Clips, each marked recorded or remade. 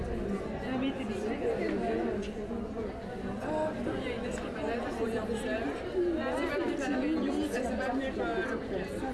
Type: recorded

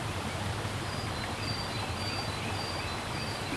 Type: recorded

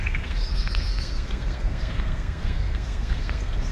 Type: remade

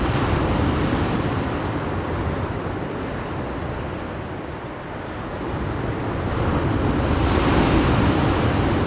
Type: recorded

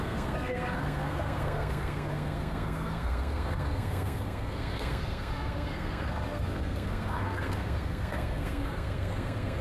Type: remade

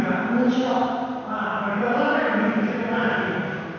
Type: recorded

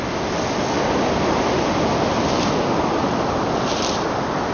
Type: recorded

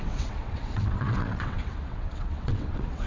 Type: remade